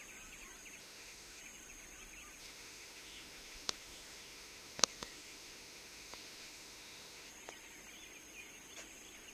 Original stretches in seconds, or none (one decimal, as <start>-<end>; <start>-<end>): 0.0-0.8; 1.4-2.4; 7.3-9.3